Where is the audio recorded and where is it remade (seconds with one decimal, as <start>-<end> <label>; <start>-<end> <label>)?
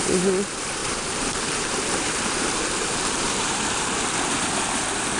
0.0-0.8 recorded; 0.8-3.9 remade; 3.9-5.2 recorded